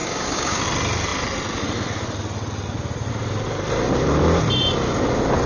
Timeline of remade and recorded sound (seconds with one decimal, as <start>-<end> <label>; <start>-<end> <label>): 0.0-0.6 remade; 0.6-5.5 recorded